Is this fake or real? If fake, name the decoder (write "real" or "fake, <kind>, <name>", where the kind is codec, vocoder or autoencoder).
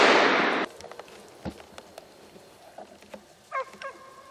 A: real